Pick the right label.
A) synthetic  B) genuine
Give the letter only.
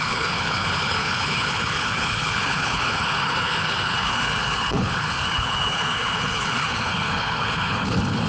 A